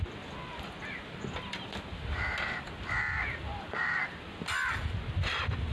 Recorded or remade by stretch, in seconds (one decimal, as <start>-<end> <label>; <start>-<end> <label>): 0.0-3.5 recorded; 3.5-4.3 remade; 4.3-5.7 recorded